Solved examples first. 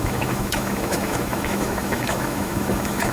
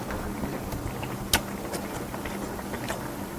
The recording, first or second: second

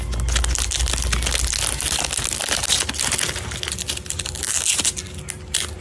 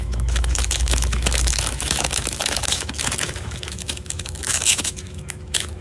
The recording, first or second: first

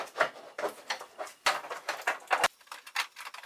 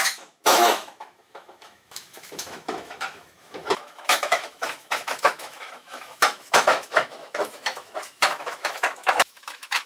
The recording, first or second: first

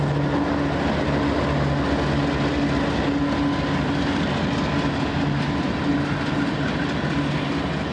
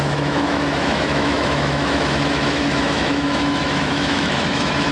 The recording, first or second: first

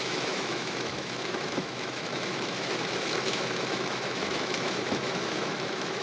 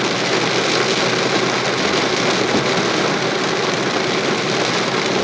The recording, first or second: second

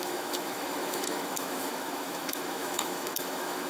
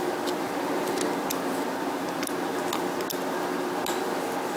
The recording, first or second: second